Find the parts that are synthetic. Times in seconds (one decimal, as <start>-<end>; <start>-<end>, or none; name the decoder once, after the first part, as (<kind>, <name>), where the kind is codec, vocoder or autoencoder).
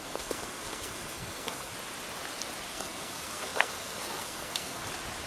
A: 0.0-1.7 (codec, SNAC); 2.7-4.8